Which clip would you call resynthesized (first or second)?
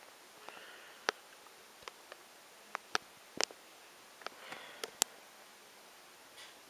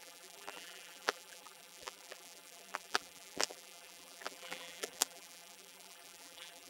second